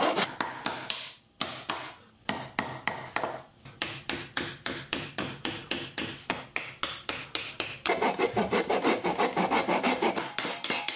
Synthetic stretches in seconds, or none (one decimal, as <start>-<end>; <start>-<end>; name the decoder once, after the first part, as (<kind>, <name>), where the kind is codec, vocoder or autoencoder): none